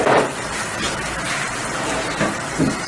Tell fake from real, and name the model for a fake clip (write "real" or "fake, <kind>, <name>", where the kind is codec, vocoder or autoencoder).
real